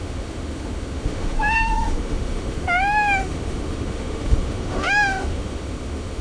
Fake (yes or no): yes